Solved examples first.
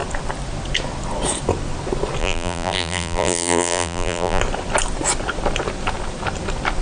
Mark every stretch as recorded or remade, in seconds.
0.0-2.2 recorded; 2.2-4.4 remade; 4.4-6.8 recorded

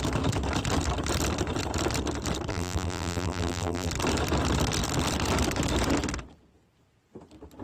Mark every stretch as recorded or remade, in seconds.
0.0-2.5 recorded; 2.5-3.9 remade; 3.9-7.6 recorded

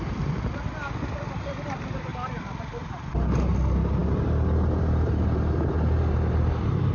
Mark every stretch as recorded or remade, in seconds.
0.0-2.1 recorded; 2.1-3.1 remade; 3.1-6.9 recorded

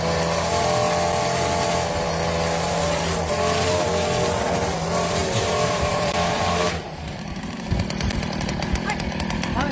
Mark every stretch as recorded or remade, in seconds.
0.0-5.2 recorded; 5.2-7.1 remade; 7.1-9.7 recorded

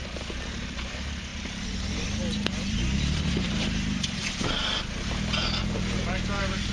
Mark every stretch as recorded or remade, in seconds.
0.0-1.3 recorded; 1.3-4.2 remade; 4.2-5.6 recorded; 5.6-6.7 remade

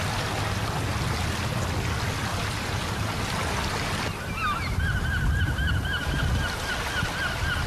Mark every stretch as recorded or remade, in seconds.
0.0-2.3 recorded; 2.3-6.2 remade; 6.2-7.7 recorded

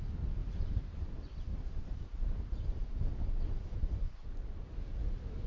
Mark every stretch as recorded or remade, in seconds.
0.0-0.4 recorded; 0.4-1.1 remade; 1.1-1.5 recorded; 1.5-4.8 remade; 4.8-5.5 recorded